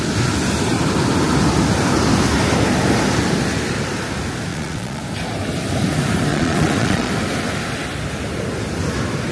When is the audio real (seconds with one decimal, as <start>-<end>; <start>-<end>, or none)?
0.0-4.5; 5.0-6.3; 7.1-9.3